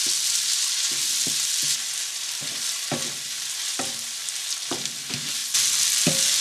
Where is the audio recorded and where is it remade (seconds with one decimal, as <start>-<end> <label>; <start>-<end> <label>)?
0.0-1.6 recorded; 1.6-4.2 remade; 4.2-6.4 recorded